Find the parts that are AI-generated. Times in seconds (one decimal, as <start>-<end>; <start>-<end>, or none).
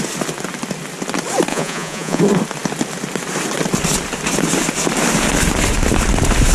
1.5-2.2